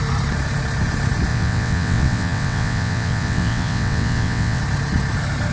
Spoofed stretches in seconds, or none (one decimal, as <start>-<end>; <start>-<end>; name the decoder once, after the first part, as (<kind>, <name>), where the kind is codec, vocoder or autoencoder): 1.3-4.6 (vocoder, WaveNeXt)